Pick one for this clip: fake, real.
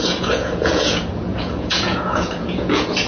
fake